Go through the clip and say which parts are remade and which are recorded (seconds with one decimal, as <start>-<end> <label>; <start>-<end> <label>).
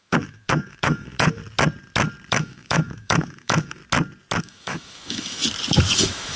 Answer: 0.0-1.4 remade; 1.4-2.3 recorded; 2.3-3.8 remade; 3.8-4.4 recorded; 4.4-5.4 remade; 5.4-6.0 recorded; 6.0-6.4 remade